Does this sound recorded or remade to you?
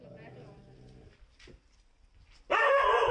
recorded